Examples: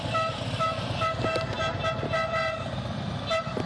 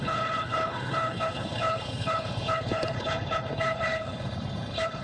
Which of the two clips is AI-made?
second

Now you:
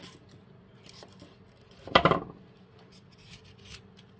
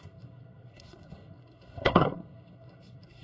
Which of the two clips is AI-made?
second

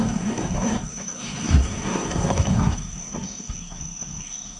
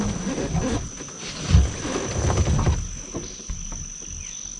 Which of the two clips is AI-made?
first